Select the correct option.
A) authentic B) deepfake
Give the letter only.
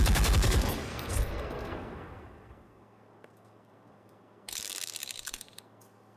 B